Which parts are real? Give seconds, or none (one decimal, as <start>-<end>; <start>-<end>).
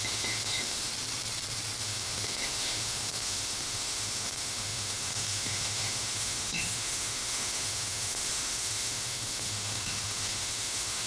0.9-1.8